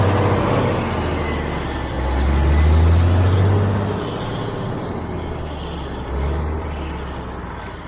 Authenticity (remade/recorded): recorded